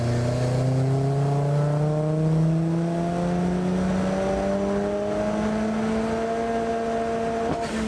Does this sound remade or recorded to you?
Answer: recorded